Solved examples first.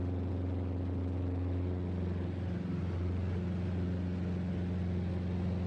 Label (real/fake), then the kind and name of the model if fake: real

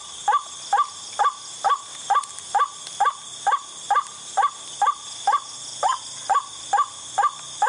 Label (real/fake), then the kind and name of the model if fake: real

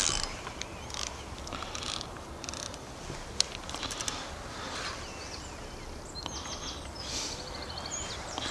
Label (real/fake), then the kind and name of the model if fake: real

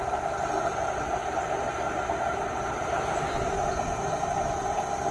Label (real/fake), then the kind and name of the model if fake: fake, vocoder, BigVGAN v2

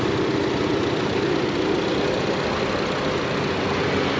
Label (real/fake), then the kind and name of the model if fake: real